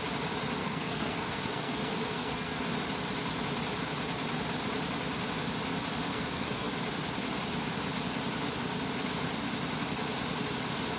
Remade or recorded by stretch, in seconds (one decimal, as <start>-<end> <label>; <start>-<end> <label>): 0.0-0.6 recorded; 0.6-2.6 remade; 2.6-6.1 recorded; 6.1-6.7 remade; 6.7-11.0 recorded